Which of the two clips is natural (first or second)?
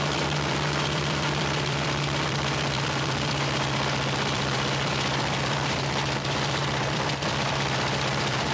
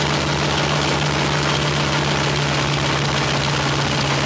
second